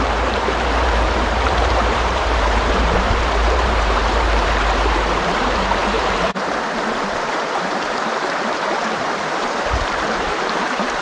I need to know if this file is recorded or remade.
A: remade